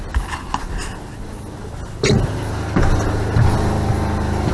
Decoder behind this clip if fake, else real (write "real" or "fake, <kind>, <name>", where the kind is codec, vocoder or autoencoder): real